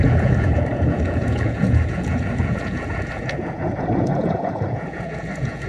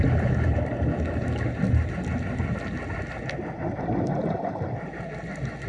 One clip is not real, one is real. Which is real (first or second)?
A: second